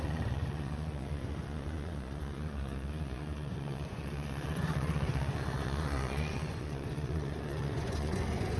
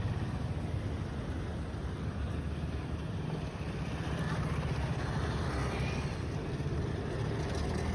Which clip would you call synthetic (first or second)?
first